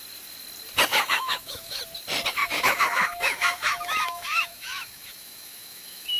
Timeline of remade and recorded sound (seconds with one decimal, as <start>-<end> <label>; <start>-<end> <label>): 0.0-0.9 recorded; 0.9-1.8 remade; 1.8-2.4 recorded; 2.4-6.2 remade